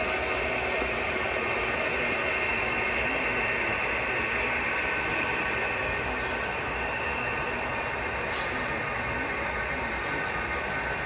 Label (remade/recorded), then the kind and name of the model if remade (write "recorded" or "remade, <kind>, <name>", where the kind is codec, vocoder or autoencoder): recorded